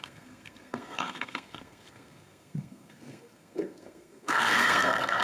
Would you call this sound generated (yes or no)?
yes